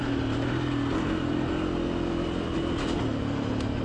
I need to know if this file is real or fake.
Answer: real